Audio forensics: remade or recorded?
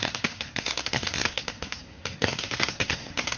remade